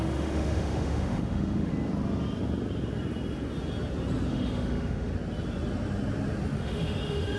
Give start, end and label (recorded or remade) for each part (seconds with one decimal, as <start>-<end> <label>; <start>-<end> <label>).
0.0-1.7 remade; 1.7-4.3 recorded; 4.3-5.1 remade; 5.1-6.6 recorded; 6.6-7.4 remade